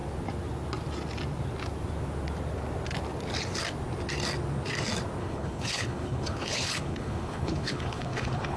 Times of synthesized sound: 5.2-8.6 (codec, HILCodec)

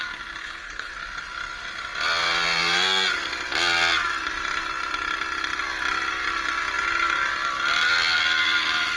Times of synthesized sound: 0.4-0.9 (codec, HILCodec)